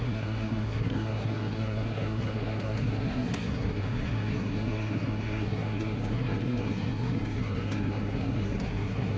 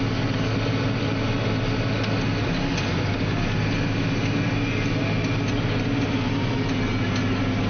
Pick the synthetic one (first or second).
first